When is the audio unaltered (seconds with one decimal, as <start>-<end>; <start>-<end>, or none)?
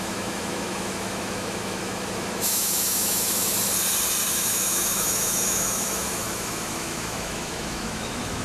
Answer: 3.5-4.3